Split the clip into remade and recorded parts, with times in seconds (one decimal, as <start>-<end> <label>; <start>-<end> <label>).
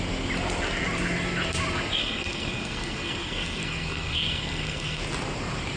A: 0.0-2.0 recorded; 2.0-5.0 remade; 5.0-5.8 recorded